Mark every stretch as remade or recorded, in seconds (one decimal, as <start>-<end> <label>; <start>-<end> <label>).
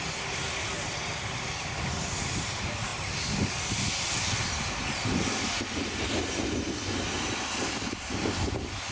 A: 0.0-8.9 recorded